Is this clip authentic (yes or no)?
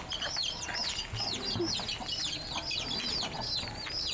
yes